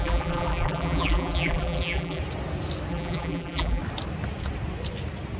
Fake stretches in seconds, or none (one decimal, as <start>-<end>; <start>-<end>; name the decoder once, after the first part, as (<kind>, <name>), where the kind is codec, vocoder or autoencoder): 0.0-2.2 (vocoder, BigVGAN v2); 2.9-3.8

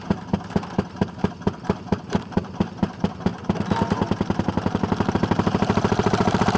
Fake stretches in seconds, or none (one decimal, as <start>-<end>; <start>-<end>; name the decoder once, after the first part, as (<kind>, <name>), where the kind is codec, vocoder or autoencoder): 0.0-3.3 (vocoder, BigVGAN v2); 5.1-6.6

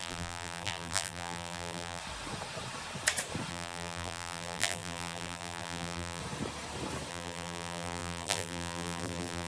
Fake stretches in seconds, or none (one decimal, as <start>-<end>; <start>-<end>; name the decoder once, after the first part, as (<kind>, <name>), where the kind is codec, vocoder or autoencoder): 0.0-2.0 (vocoder, BigVGAN v2); 3.5-6.2; 7.1-9.5